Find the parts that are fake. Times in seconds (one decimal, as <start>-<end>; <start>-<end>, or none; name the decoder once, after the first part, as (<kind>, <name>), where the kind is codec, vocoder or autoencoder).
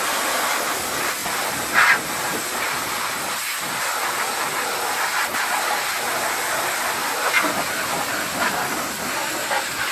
none